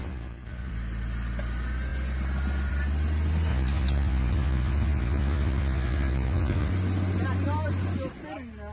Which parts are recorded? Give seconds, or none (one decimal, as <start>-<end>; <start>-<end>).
0.7-3.5; 6.7-8.7